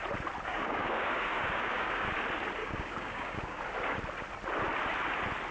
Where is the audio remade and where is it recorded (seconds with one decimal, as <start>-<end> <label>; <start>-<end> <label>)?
0.0-0.5 recorded; 0.5-2.1 remade; 2.1-2.6 recorded; 2.6-3.6 remade; 3.6-5.5 recorded